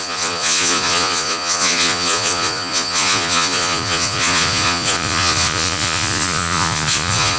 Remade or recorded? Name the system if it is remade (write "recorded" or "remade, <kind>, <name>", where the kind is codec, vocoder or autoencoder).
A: remade, vocoder, Vocos